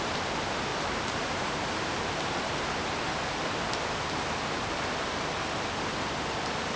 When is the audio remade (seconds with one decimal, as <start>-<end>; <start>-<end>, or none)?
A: 0.7-2.6